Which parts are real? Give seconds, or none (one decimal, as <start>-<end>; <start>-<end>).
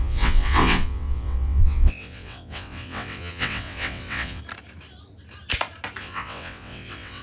4.4-6.0